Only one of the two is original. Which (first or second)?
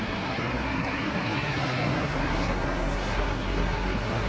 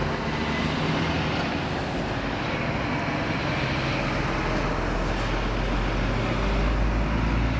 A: second